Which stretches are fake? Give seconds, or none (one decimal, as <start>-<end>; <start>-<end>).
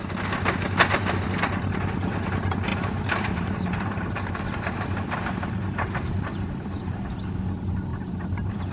2.7-7.1; 7.9-8.7